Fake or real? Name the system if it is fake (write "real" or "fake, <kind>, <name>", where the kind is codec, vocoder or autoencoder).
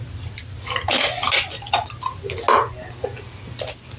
real